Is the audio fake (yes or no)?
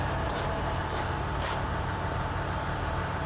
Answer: no